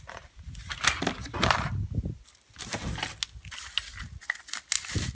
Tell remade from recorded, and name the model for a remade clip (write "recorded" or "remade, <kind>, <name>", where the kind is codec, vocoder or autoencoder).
recorded